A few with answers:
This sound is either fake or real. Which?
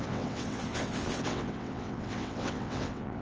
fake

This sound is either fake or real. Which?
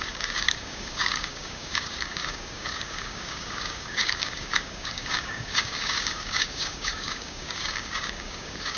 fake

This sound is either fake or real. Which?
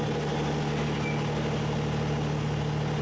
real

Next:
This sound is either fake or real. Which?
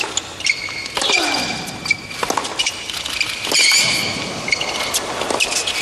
real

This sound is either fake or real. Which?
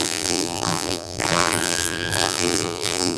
fake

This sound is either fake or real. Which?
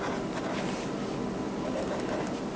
real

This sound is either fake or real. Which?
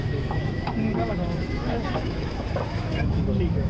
fake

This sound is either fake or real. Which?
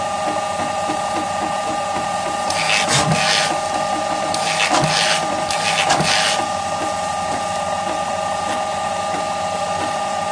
real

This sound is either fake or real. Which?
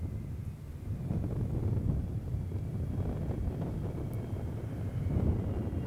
fake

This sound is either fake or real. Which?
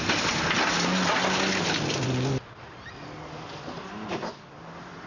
real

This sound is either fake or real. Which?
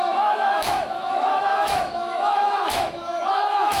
fake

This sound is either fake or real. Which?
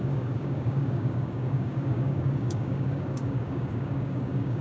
fake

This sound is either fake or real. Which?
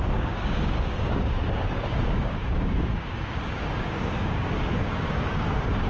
fake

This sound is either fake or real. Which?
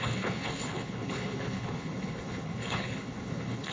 fake